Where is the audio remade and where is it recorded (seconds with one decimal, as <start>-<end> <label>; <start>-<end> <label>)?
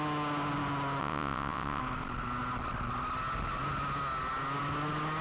0.0-1.0 recorded; 1.0-1.8 remade; 1.8-5.2 recorded